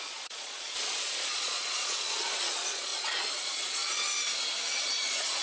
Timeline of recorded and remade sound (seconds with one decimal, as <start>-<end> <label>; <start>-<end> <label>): 0.0-2.9 remade; 2.9-3.4 recorded; 3.4-3.8 remade; 3.8-4.9 recorded; 4.9-5.4 remade